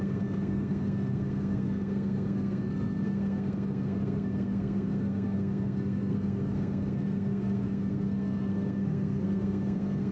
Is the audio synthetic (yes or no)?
yes